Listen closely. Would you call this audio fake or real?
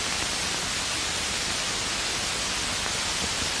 real